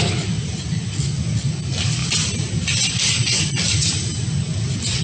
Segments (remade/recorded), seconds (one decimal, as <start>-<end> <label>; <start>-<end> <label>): 0.0-5.0 recorded